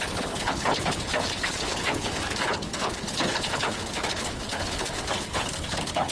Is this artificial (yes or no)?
yes